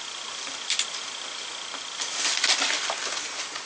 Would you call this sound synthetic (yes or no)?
no